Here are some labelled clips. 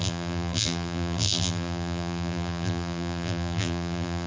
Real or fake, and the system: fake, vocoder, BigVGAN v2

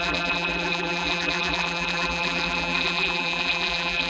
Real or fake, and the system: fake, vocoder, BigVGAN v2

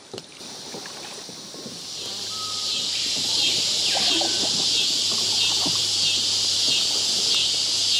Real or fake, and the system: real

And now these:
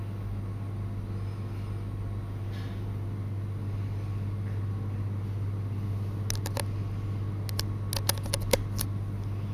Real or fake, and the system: real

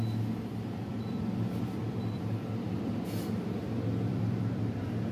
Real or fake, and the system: fake, vocoder, BigVGAN v2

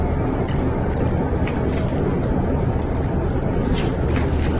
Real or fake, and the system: real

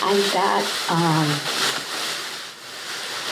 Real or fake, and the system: real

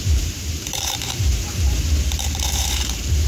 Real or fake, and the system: fake, vocoder, BigVGAN v2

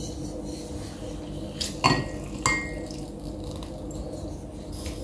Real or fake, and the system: real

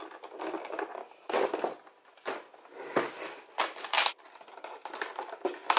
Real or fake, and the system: real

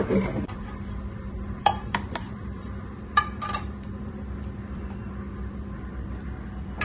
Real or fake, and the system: fake, vocoder, BigVGAN v2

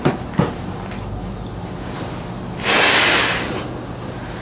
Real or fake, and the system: real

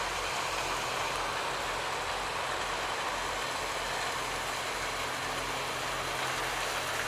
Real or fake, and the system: real